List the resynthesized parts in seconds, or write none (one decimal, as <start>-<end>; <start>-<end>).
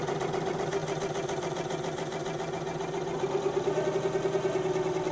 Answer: none